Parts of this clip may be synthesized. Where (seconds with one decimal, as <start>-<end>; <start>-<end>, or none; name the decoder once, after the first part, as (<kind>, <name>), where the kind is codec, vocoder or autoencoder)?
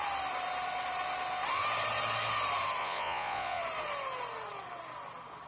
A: 2.8-3.6 (vocoder, Vocos)